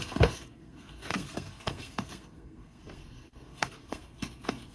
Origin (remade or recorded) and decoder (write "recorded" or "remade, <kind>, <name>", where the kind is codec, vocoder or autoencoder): remade, codec, SNAC